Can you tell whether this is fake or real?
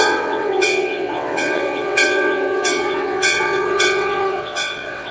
fake